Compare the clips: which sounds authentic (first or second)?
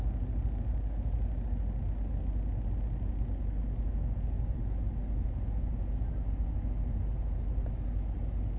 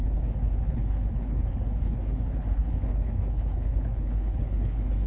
first